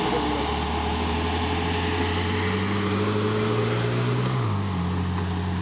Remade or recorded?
recorded